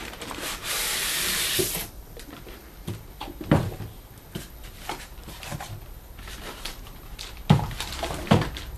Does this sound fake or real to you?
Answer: fake